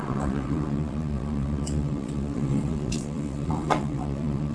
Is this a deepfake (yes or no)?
yes